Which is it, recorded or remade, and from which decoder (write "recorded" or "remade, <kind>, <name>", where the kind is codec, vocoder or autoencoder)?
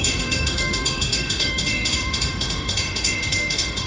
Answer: remade, autoencoder, DAC-VAE